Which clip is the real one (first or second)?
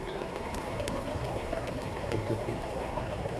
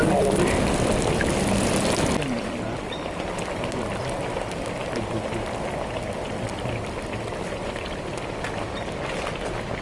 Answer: second